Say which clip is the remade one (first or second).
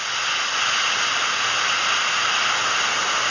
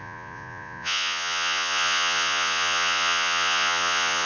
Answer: second